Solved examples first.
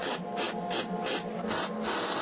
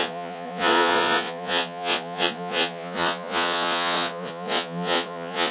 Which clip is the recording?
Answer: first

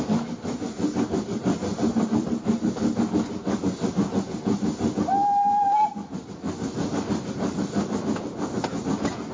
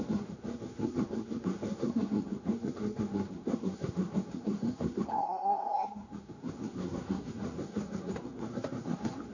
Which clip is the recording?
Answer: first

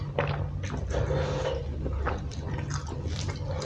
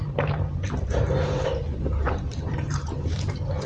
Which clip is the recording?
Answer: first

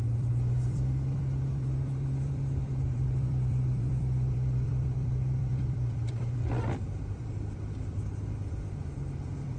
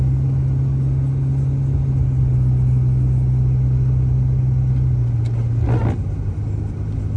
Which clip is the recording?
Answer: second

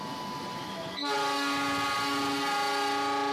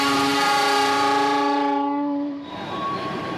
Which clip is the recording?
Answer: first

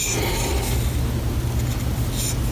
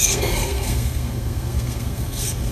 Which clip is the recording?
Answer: first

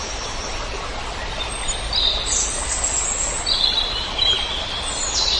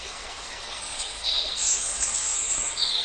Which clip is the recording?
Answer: first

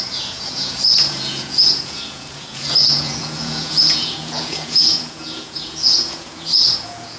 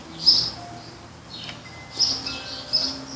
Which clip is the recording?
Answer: second